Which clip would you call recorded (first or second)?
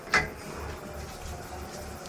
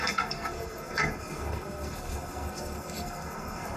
first